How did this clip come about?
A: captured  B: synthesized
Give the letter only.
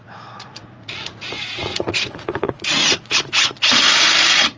B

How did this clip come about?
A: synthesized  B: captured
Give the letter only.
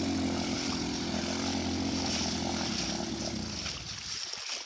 B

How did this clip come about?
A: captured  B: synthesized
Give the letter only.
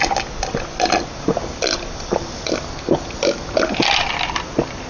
A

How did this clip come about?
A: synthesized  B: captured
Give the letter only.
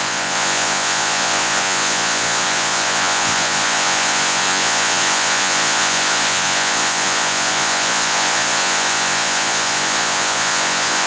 A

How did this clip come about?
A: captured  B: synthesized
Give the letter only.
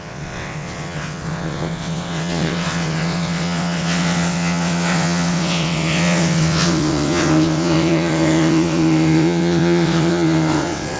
B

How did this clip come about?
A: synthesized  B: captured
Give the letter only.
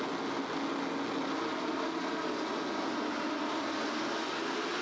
B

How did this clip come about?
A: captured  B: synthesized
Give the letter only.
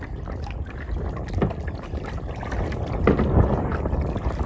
A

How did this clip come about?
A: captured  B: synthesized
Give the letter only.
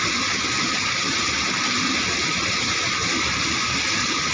A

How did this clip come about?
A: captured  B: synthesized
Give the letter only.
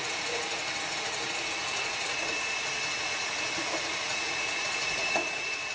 B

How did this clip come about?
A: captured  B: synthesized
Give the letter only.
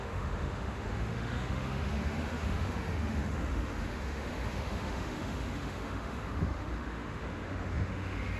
B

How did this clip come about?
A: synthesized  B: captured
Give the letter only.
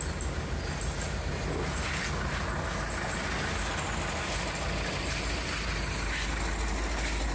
B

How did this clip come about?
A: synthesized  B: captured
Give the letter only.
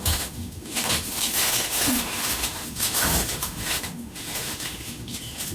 A